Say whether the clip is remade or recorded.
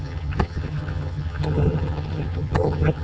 remade